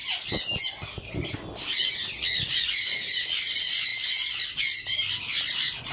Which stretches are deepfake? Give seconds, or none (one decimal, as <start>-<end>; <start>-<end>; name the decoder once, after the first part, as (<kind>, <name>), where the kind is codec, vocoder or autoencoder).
none